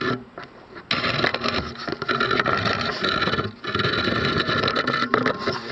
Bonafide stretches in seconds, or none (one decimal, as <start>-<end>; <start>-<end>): 0.0-5.7